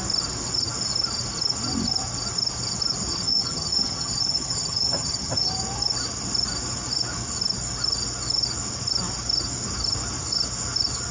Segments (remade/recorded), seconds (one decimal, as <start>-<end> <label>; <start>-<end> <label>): 0.0-3.1 recorded; 3.1-5.5 remade; 5.5-11.1 recorded